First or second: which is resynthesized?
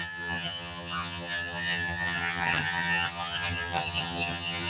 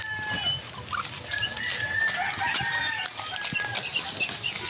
first